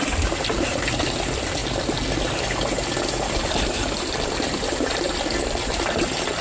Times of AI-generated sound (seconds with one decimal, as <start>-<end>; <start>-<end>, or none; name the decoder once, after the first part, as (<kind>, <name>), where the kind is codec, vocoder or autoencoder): 0.0-1.6 (vocoder, BigVGAN v2); 5.4-6.4